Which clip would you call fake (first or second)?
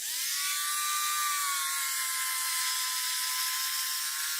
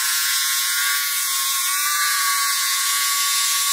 second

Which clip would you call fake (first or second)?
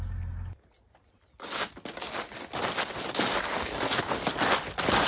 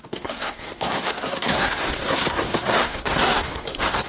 second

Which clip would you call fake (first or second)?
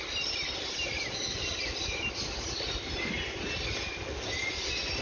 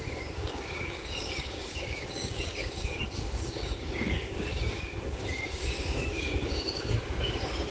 second